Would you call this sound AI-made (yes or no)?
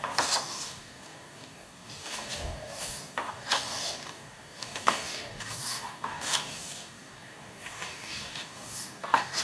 yes